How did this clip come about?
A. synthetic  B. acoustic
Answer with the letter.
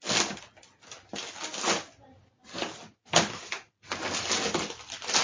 B